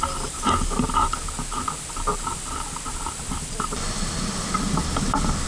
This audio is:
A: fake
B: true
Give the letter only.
B